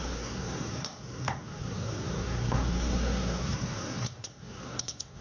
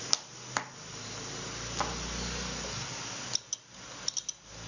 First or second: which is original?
second